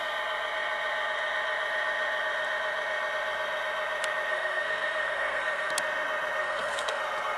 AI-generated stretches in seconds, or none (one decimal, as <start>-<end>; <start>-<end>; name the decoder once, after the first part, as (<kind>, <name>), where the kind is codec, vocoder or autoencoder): 4.3-5.7 (codec, SNAC); 6.4-7.0